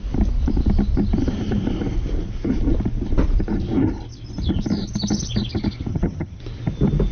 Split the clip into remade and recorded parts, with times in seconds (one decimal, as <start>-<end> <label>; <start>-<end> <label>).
0.0-5.9 recorded; 5.9-6.4 remade; 6.4-7.1 recorded